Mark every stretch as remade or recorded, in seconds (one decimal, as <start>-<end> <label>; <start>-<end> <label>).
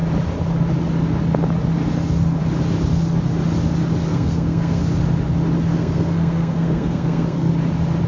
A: 0.0-4.1 recorded; 4.1-4.8 remade; 4.8-5.7 recorded; 5.7-7.5 remade; 7.5-8.1 recorded